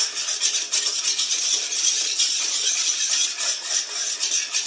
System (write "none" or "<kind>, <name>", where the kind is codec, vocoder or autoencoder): none